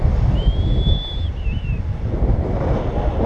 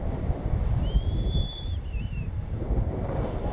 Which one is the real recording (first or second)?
first